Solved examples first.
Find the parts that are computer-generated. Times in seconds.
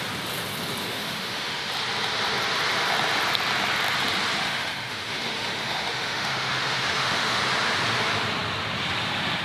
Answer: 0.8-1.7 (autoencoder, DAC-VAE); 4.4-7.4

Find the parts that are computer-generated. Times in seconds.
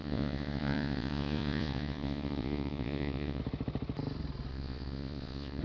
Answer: 0.0-3.4 (vocoder, Vocos); 4.5-5.6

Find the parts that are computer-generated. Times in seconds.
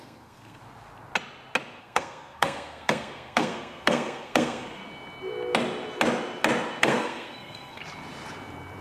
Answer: 0.0-0.6 (codec, SNAC); 1.8-4.8; 6.8-7.8